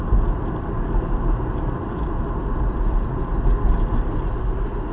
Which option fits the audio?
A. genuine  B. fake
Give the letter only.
A